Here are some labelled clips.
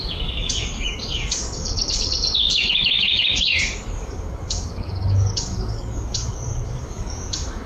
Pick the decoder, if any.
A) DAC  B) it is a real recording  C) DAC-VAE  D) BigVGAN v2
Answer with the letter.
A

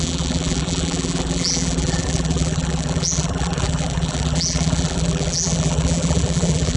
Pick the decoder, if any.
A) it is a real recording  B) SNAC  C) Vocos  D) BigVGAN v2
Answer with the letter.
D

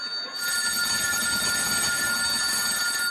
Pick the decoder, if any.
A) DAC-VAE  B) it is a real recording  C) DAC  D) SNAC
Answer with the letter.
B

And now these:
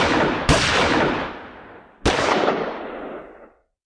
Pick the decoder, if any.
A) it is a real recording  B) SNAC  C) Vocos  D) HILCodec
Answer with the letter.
A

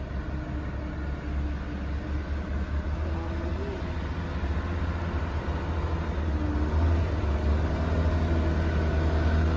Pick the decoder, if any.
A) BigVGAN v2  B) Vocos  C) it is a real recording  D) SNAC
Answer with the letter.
C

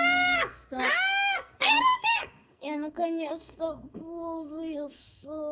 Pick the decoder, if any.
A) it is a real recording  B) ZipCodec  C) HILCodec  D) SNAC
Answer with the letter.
D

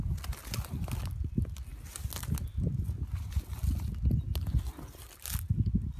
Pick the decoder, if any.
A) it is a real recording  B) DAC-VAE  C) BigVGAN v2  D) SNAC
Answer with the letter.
A